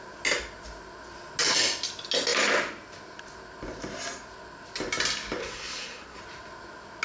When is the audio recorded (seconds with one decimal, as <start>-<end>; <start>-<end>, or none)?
0.0-5.4; 6.2-7.0